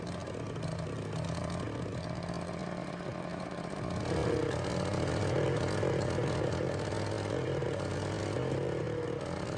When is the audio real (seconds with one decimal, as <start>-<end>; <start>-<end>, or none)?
0.0-3.3; 3.8-9.6